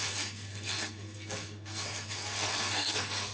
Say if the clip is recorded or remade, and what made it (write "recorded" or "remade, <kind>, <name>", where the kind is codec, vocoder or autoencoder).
remade, codec, SNAC